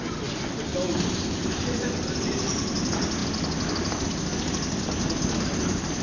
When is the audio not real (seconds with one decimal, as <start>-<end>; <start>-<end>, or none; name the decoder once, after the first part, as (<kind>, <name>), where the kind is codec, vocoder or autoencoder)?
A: 1.4-2.0 (vocoder, BigVGAN v2)